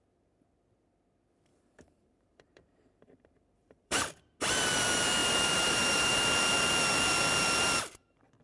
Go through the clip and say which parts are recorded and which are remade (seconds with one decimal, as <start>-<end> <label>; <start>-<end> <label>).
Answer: 0.0-1.5 recorded; 1.5-4.0 remade; 4.0-5.2 recorded; 5.2-6.1 remade; 6.1-8.4 recorded